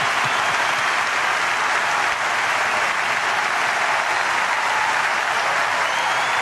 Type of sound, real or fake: real